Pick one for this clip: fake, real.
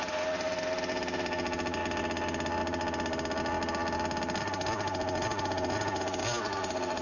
real